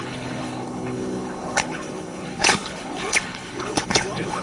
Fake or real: fake